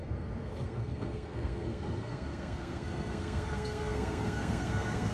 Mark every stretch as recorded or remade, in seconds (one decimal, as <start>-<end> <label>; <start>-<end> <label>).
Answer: 0.0-5.1 remade